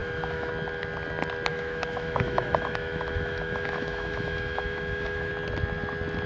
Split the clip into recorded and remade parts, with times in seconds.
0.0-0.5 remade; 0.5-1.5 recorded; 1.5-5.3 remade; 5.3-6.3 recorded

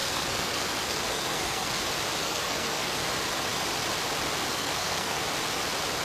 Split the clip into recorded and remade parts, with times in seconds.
0.0-1.8 remade; 1.8-2.2 recorded; 2.2-3.0 remade; 3.0-4.5 recorded; 4.5-5.2 remade; 5.2-6.0 recorded

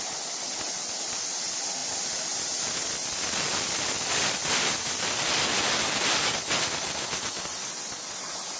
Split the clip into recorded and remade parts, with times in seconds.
0.0-8.6 recorded

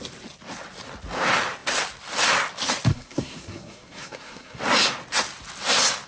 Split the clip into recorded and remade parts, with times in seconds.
0.0-2.9 recorded; 2.9-4.6 remade; 4.6-6.1 recorded

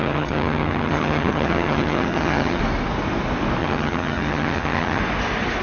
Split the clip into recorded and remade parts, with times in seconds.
0.0-2.6 remade; 2.6-3.6 recorded; 3.6-5.0 remade; 5.0-5.6 recorded

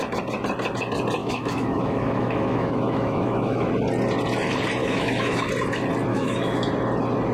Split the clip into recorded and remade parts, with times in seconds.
0.0-1.2 recorded; 1.2-3.7 remade; 3.7-4.8 recorded; 4.8-5.5 remade; 5.5-6.1 recorded; 6.1-6.7 remade; 6.7-7.3 recorded